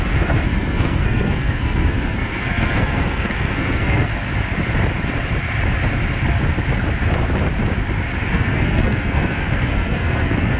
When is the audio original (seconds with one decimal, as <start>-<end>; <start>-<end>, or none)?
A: 4.1-8.3